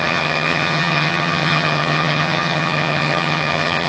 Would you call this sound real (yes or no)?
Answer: no